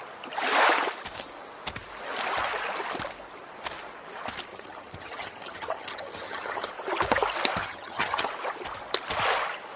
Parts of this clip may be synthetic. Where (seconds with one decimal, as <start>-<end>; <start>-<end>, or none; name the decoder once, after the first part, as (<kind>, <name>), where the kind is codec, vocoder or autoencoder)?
4.5-6.7 (vocoder, HiFi-GAN); 7.6-8.3